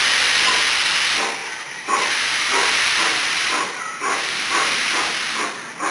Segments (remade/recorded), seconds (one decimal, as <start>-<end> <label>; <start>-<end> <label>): 0.0-1.4 recorded; 1.4-4.9 remade; 4.9-5.9 recorded